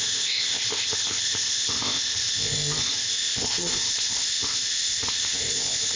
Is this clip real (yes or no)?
no